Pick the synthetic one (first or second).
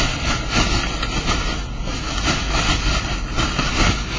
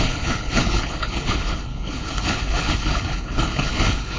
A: second